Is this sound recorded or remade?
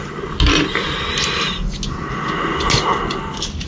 recorded